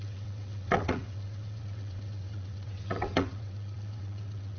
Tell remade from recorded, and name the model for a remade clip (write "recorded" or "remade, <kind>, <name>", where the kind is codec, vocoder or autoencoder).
remade, vocoder, WaveNeXt